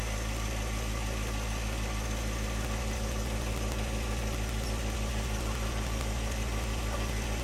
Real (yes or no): yes